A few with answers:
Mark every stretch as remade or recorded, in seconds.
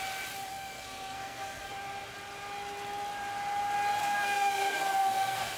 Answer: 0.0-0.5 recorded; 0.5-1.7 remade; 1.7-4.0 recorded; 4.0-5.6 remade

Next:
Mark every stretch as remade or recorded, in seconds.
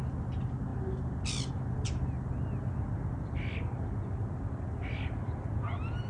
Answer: 0.0-6.1 recorded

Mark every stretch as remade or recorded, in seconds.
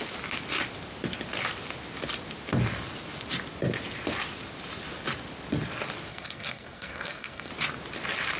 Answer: 0.0-6.1 recorded; 6.1-7.5 remade; 7.5-8.4 recorded